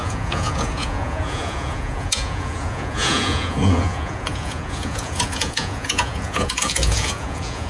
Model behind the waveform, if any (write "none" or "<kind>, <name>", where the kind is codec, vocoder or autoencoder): vocoder, Vocos